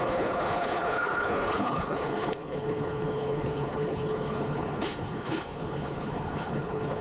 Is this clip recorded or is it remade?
remade